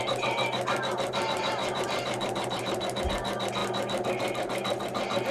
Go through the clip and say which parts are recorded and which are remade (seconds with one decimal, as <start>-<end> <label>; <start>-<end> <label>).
0.0-1.6 recorded; 1.6-3.0 remade; 3.0-5.3 recorded